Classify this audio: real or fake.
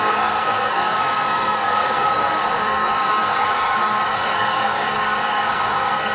fake